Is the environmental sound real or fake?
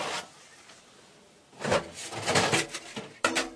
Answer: real